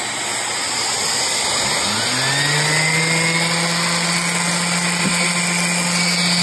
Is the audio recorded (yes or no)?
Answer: yes